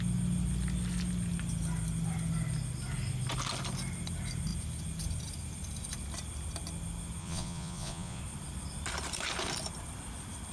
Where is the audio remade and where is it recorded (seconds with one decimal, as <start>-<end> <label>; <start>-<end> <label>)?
0.0-7.2 recorded; 7.2-8.2 remade; 8.2-10.5 recorded